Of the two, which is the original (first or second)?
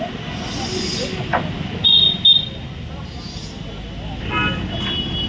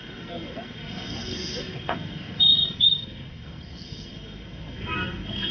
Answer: first